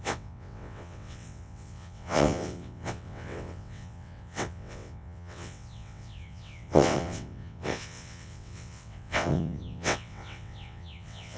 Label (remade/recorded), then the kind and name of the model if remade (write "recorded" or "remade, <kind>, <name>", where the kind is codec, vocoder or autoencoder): remade, vocoder, WaveNeXt